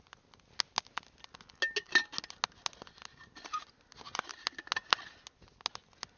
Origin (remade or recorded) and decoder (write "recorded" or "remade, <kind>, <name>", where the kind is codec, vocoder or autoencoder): recorded